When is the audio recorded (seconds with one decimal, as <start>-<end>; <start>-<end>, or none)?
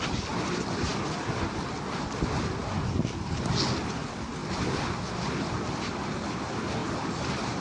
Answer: 0.0-4.4; 5.6-7.6